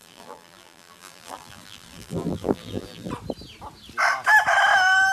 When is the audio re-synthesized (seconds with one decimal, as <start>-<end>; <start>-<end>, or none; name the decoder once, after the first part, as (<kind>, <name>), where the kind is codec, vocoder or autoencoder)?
0.0-3.1 (vocoder, BigVGAN v2)